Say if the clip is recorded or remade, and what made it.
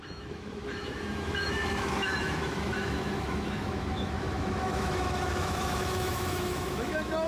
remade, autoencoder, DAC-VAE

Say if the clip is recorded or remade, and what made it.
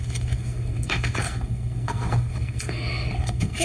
remade, codec, SNAC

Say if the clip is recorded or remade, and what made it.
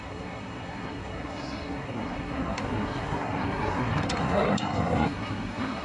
remade, codec, SNAC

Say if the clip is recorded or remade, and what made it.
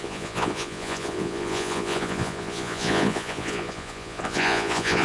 remade, vocoder, Vocos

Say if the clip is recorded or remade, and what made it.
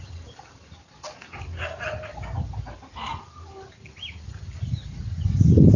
recorded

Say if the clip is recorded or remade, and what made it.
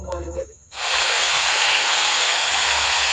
remade, codec, SNAC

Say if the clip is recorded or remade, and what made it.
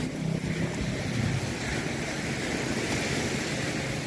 recorded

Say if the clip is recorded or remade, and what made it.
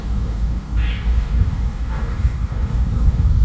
remade, codec, DAC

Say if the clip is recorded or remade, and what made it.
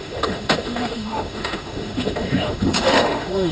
remade, autoencoder, DAC-VAE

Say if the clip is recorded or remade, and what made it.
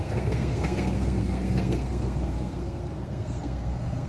remade, codec, SNAC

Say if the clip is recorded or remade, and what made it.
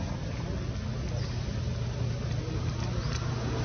recorded